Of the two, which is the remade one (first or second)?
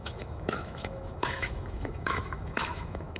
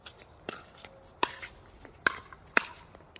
first